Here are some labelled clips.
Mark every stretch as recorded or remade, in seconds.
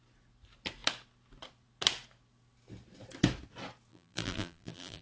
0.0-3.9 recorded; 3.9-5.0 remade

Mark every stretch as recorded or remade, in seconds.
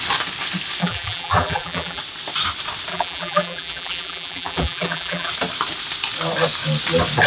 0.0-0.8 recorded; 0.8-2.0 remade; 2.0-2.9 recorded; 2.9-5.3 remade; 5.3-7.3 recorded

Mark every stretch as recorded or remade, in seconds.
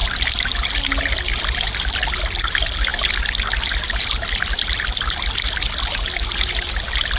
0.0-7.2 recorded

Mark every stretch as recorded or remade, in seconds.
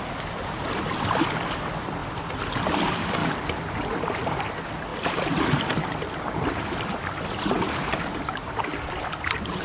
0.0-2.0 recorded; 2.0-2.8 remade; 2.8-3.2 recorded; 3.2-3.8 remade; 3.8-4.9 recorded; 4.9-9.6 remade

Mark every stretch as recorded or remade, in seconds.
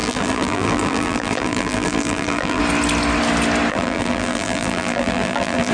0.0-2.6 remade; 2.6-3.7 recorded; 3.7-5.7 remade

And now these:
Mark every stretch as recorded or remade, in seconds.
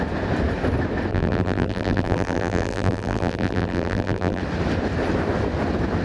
0.0-1.1 recorded; 1.1-4.4 remade; 4.4-6.0 recorded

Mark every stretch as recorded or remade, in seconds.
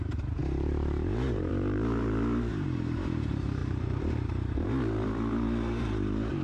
0.0-6.4 remade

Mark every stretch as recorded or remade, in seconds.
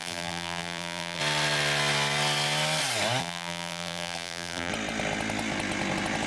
0.0-1.2 remade; 1.2-3.2 recorded; 3.2-4.7 remade; 4.7-6.3 recorded